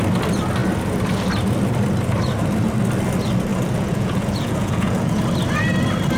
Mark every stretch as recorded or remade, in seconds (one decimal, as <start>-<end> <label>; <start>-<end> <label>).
0.0-3.5 recorded; 3.5-5.2 remade; 5.2-6.2 recorded